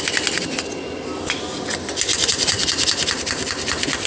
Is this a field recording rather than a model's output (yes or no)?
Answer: yes